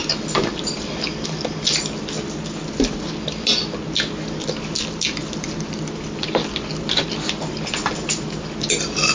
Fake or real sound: real